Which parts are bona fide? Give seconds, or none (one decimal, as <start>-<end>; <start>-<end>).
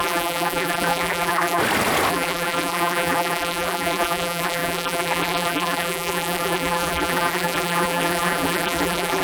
1.6-2.1